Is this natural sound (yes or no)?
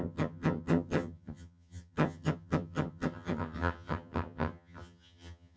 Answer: no